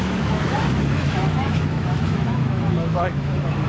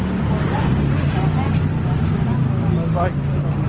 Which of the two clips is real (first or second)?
second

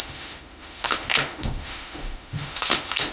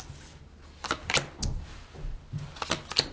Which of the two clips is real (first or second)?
second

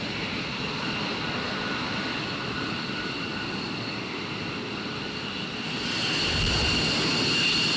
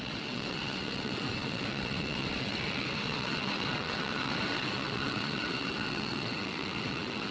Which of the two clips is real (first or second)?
first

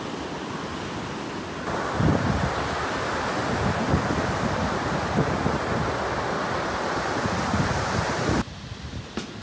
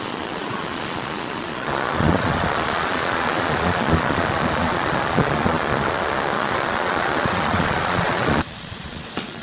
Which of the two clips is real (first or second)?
first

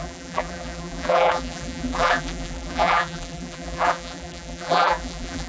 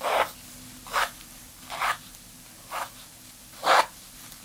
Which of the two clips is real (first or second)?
second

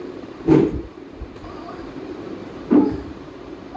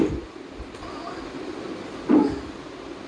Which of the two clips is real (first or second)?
second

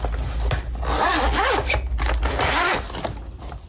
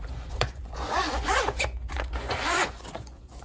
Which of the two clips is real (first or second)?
first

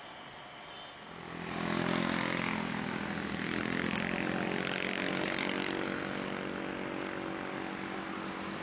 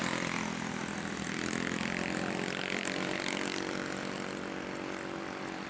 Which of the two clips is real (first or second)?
first